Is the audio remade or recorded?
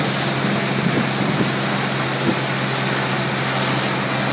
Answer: recorded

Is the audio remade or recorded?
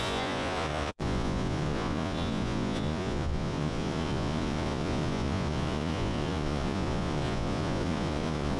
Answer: remade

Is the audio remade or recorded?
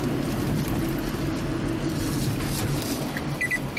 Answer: recorded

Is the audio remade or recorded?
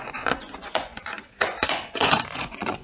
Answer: remade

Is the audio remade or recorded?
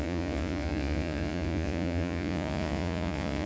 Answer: remade